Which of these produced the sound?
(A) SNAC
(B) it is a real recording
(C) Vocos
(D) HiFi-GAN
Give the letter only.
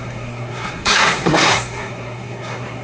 A